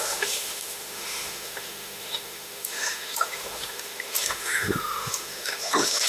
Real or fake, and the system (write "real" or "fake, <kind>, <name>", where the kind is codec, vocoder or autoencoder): fake, autoencoder, DAC-VAE